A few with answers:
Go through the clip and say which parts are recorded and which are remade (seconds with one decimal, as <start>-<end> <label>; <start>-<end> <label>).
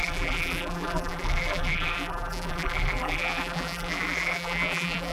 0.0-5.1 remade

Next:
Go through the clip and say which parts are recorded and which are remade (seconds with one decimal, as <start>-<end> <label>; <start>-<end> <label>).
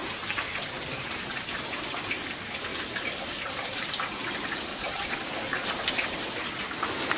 0.0-1.6 remade; 1.6-2.7 recorded; 2.7-3.9 remade; 3.9-4.7 recorded; 4.7-6.4 remade; 6.4-7.2 recorded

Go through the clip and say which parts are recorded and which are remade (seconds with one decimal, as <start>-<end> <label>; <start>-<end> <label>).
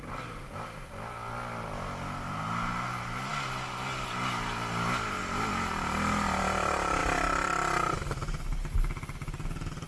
0.0-9.9 recorded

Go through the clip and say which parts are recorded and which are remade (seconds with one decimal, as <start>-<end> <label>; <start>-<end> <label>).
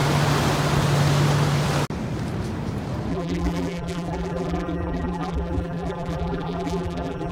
0.0-3.1 recorded; 3.1-7.3 remade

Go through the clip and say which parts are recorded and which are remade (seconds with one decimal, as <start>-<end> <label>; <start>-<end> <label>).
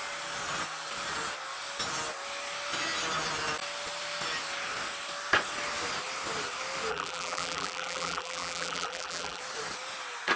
0.0-6.9 recorded; 6.9-9.4 remade; 9.4-10.4 recorded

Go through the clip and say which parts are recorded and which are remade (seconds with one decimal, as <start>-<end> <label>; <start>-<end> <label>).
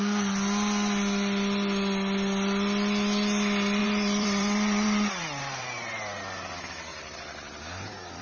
0.0-3.8 recorded; 3.8-6.2 remade; 6.2-6.9 recorded; 6.9-8.2 remade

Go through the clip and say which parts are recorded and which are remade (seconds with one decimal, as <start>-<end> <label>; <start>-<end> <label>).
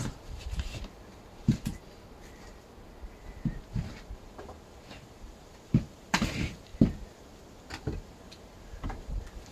0.0-1.7 remade; 1.7-3.7 recorded; 3.7-6.7 remade; 6.7-7.8 recorded; 7.8-9.5 remade